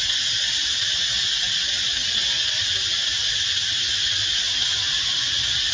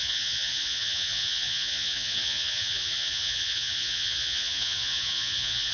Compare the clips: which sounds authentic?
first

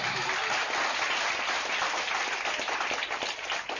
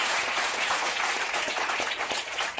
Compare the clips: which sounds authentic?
first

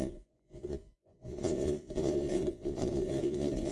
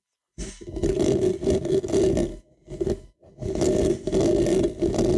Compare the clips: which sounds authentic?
second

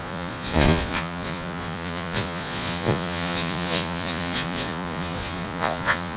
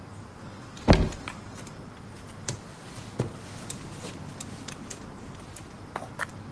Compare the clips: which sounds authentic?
second